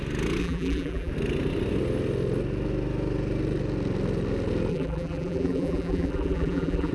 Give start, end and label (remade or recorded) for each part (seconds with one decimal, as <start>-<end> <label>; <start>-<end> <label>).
0.0-0.4 recorded; 0.4-1.1 remade; 1.1-4.7 recorded; 4.7-6.9 remade

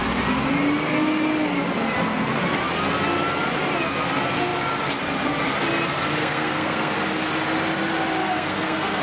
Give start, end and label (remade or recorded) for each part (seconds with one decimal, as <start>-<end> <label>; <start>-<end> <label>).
0.0-6.2 recorded; 6.2-6.9 remade; 6.9-8.2 recorded; 8.2-9.0 remade